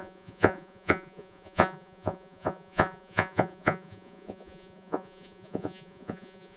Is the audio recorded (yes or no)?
no